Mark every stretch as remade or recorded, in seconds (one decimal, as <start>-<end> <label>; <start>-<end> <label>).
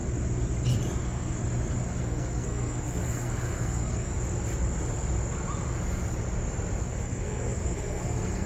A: 0.0-1.0 recorded; 1.0-1.4 remade; 1.4-2.0 recorded; 2.0-4.1 remade; 4.1-6.8 recorded; 6.8-8.5 remade